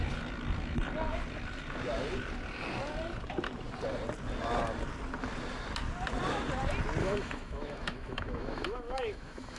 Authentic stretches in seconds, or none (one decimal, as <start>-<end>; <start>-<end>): 0.0-7.0